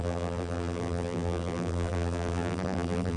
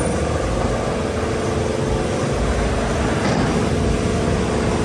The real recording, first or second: second